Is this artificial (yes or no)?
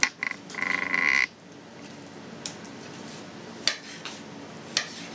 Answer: no